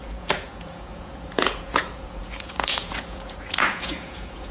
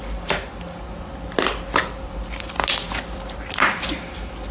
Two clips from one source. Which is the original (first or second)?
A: second